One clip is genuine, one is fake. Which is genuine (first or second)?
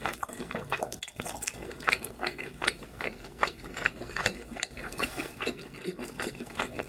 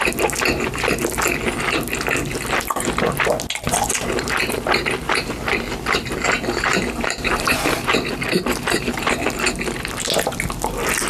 second